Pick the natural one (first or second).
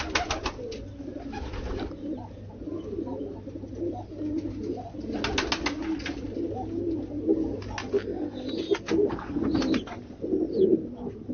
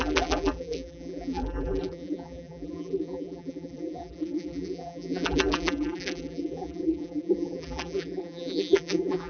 first